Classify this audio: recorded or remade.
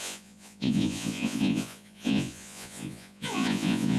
remade